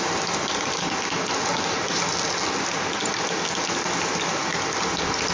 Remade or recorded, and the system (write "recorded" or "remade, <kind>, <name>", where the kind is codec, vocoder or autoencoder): recorded